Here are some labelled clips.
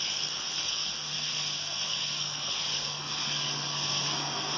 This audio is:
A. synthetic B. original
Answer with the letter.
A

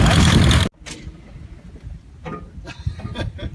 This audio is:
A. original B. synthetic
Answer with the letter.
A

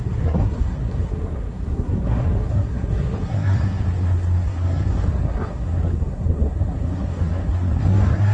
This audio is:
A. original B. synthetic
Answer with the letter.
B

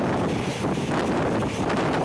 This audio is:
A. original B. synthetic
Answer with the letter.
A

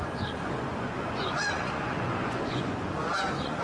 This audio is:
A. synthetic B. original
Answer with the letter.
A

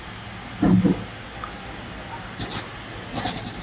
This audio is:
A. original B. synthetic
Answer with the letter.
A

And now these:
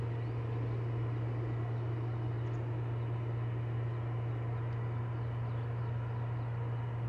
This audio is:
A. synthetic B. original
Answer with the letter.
B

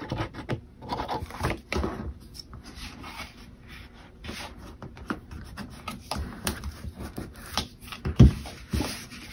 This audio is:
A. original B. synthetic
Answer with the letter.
B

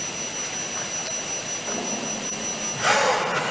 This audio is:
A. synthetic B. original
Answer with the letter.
B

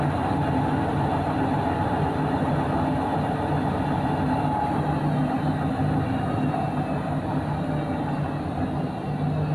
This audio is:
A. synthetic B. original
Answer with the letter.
B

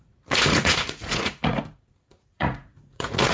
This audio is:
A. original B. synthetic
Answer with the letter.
B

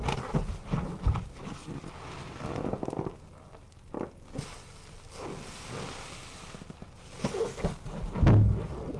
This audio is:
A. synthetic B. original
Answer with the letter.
B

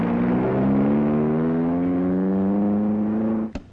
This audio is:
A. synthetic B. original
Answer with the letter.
B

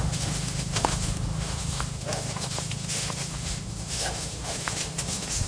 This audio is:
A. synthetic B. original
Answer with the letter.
A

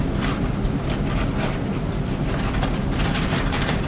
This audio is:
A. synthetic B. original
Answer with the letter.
A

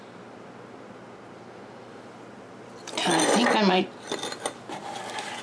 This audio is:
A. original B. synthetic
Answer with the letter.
A